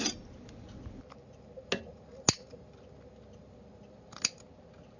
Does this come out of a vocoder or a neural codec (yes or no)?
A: no